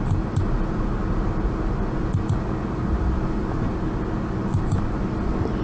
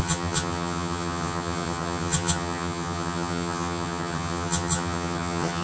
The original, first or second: first